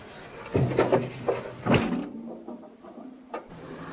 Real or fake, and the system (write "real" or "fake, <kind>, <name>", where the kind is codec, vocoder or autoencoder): real